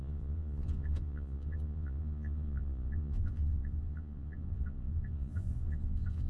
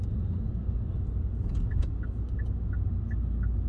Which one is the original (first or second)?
second